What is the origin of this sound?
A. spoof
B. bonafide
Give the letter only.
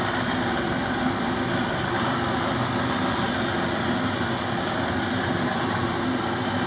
B